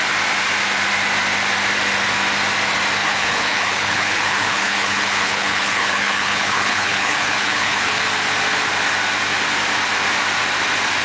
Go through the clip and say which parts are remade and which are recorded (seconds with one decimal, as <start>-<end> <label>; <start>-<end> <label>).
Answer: 0.0-3.0 recorded; 3.0-8.0 remade; 8.0-11.0 recorded